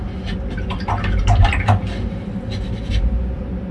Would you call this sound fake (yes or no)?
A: no